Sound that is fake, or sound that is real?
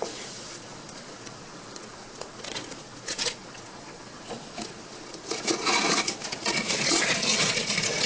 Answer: fake